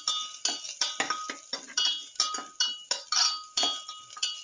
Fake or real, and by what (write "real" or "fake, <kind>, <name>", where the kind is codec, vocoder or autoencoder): real